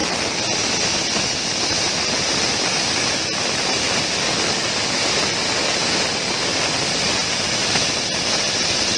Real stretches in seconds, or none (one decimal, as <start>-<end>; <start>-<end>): 0.0-9.0